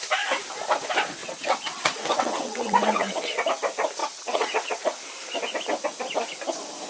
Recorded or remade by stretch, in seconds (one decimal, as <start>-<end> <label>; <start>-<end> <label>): 0.0-1.2 recorded; 1.2-3.5 remade; 3.5-4.0 recorded; 4.0-5.0 remade; 5.0-6.9 recorded